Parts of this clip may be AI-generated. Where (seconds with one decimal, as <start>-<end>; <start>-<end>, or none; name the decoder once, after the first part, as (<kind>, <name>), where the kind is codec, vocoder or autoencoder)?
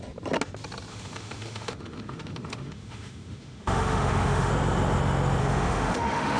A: 0.9-4.5 (autoencoder, DAC-VAE); 5.4-6.4